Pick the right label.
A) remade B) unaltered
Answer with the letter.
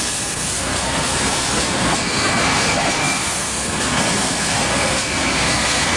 A